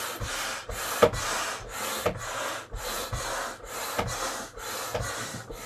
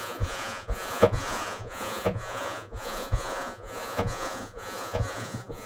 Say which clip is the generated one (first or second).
second